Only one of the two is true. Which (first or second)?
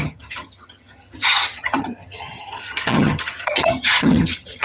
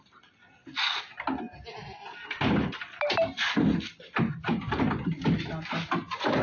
second